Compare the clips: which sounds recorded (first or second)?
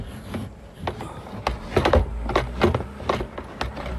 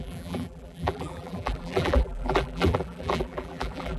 first